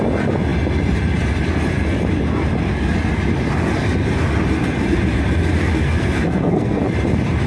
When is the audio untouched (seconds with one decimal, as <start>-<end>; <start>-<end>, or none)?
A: 0.0-5.7; 6.8-7.5